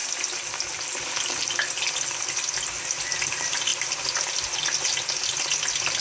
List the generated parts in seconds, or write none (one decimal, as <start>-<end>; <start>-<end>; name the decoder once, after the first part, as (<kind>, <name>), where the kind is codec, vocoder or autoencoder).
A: none